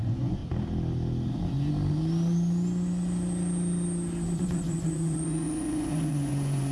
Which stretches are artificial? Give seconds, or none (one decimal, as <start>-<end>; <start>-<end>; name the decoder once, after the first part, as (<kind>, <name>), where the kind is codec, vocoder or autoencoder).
0.0-0.4 (vocoder, Vocos); 4.4-6.7